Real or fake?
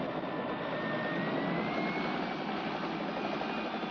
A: real